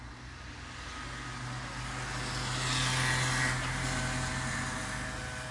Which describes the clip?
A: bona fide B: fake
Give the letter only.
A